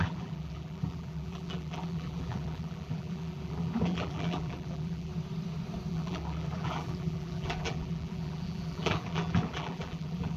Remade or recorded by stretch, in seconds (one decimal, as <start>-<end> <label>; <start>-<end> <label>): 0.0-5.1 remade; 5.1-5.9 recorded; 5.9-10.4 remade